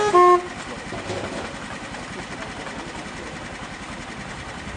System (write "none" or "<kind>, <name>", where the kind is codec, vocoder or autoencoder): none